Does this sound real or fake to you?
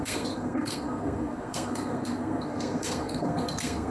fake